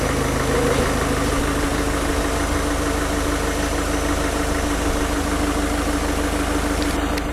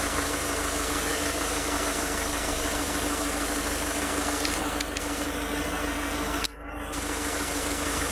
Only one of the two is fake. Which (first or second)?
second